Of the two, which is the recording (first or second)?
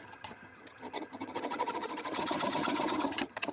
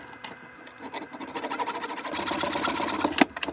second